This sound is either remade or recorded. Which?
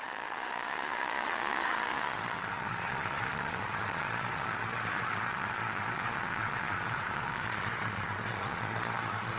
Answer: remade